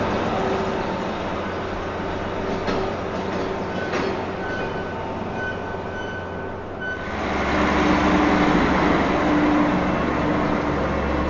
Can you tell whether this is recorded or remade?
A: recorded